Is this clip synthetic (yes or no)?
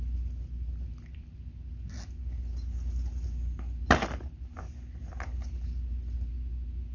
no